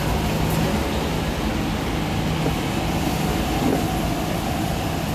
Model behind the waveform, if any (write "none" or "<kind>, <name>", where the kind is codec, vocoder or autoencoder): none